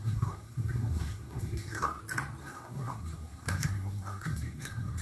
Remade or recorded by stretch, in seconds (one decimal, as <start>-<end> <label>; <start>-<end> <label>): 0.0-2.0 remade; 2.0-2.4 recorded; 2.4-5.0 remade

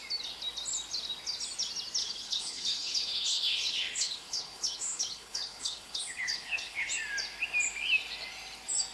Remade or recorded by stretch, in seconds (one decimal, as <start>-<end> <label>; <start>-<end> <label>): 0.0-2.0 recorded; 2.0-6.9 remade; 6.9-8.9 recorded

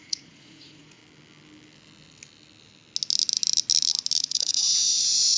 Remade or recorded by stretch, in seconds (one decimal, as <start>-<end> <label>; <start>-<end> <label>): 0.0-1.0 remade; 1.0-4.2 recorded; 4.2-5.4 remade

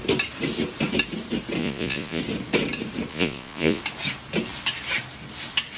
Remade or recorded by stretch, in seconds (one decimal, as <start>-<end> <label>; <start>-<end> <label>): 0.0-1.6 recorded; 1.6-2.2 remade; 2.2-3.1 recorded; 3.1-3.8 remade; 3.8-5.8 recorded

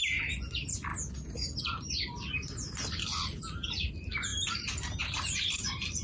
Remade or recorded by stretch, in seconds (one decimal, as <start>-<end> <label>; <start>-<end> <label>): 0.0-0.9 remade; 0.9-1.6 recorded; 1.6-6.0 remade

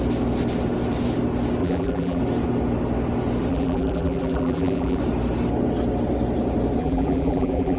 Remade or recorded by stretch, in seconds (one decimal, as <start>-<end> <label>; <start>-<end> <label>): 0.0-1.6 recorded; 1.6-2.2 remade; 2.2-3.5 recorded; 3.5-5.0 remade; 5.0-6.8 recorded; 6.8-7.8 remade